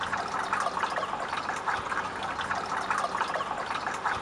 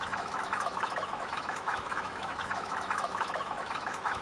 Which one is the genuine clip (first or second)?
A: first